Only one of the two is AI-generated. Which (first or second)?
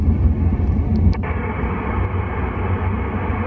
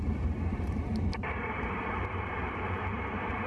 second